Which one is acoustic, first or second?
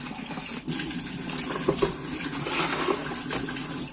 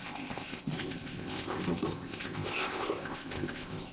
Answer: first